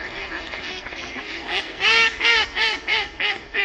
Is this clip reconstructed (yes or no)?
yes